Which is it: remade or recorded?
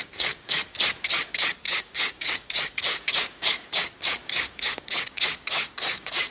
remade